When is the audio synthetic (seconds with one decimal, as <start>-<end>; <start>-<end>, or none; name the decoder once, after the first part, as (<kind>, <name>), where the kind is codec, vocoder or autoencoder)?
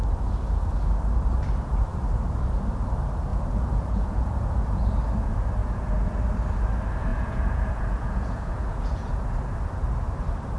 3.3-4.8 (vocoder, Vocos); 5.6-6.2; 7.1-9.1